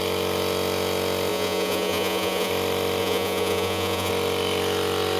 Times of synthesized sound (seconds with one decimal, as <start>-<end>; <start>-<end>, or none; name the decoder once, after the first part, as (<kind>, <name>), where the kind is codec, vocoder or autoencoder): 1.3-2.5 (vocoder, Vocos); 3.0-4.1